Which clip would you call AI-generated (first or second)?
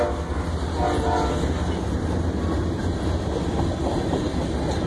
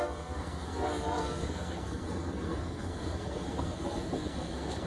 second